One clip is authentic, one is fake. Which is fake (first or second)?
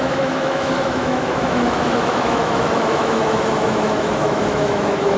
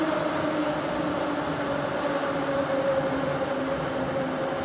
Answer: first